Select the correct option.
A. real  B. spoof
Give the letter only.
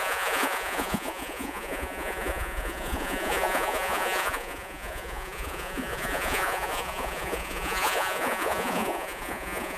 B